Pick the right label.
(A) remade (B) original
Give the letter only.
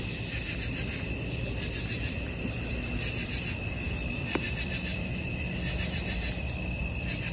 B